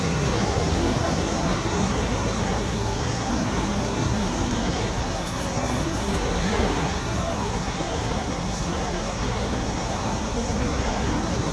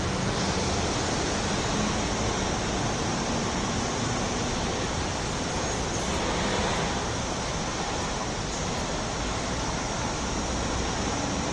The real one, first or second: second